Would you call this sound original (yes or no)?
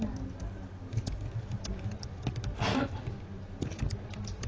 yes